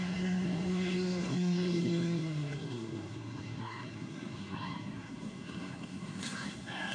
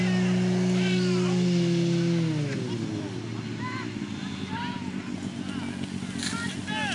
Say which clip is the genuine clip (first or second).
second